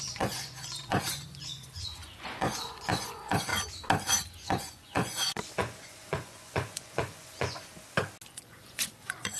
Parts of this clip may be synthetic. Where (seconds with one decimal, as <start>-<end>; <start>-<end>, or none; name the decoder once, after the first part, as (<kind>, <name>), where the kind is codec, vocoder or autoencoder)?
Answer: 0.0-3.5 (vocoder, Vocos); 4.3-7.7; 8.3-9.4